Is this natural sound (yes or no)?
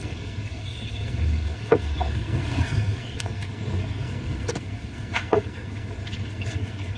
no